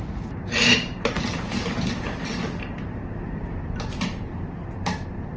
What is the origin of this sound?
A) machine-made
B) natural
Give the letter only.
A